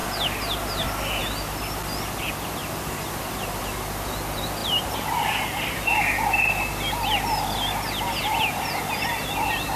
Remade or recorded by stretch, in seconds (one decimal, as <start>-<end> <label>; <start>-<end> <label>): 0.0-1.2 remade; 1.2-4.6 recorded; 4.6-8.6 remade; 8.6-9.8 recorded